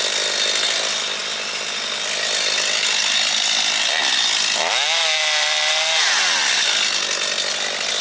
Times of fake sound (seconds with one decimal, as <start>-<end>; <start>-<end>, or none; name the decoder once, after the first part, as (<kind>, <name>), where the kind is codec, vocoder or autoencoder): none